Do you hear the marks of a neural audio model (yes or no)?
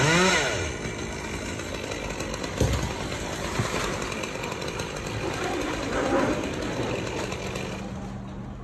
no